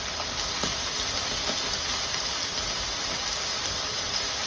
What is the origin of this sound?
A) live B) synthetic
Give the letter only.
A